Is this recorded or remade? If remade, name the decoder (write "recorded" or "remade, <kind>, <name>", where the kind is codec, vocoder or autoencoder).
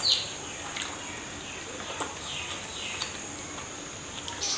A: recorded